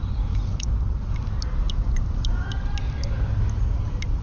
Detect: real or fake real